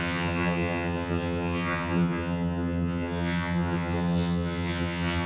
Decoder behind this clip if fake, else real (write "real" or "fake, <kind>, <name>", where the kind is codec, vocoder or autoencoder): fake, vocoder, HiFi-GAN